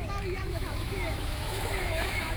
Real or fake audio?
fake